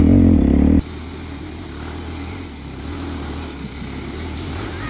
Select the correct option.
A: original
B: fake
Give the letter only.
A